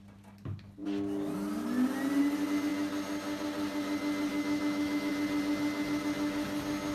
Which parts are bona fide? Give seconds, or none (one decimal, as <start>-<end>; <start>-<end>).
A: 0.0-4.3; 5.1-6.9